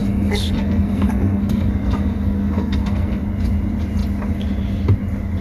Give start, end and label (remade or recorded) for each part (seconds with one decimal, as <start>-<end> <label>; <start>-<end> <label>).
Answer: 0.0-3.2 remade; 3.2-5.4 recorded